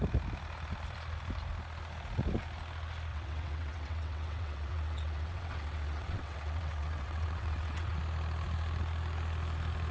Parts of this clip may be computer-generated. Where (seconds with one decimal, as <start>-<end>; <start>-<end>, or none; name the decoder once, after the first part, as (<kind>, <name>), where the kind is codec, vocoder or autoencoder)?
3.1-8.0 (vocoder, WaveNeXt)